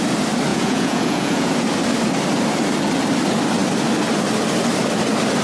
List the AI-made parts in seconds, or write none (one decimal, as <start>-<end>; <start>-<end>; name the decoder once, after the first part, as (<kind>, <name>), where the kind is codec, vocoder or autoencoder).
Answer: 0.5-1.5 (vocoder, Vocos)